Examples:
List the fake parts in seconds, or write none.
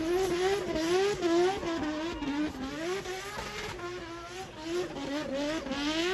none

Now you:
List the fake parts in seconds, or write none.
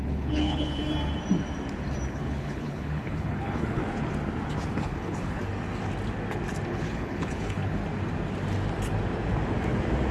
0.0-0.8; 2.1-3.8; 4.7-5.4; 6.7-7.8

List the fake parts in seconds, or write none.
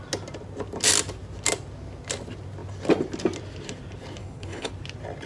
4.2-4.7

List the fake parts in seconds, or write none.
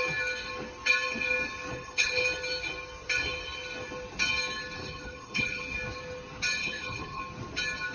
1.7-2.2; 4.8-5.6; 6.6-7.2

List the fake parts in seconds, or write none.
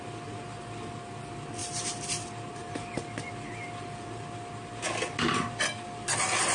none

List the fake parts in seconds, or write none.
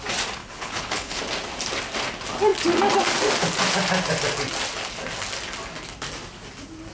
0.4-1.2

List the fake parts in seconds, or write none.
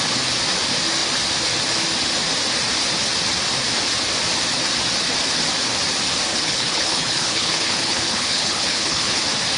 6.3-9.2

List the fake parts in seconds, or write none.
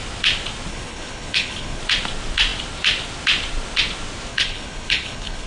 0.7-1.8; 4.3-5.5